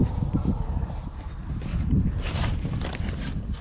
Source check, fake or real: fake